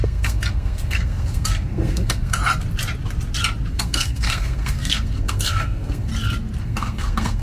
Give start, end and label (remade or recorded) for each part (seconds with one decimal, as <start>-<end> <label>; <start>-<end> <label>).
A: 0.0-2.4 remade; 2.4-3.7 recorded; 3.7-6.1 remade; 6.1-6.6 recorded; 6.6-7.4 remade